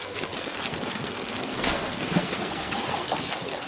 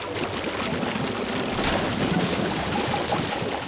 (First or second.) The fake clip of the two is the first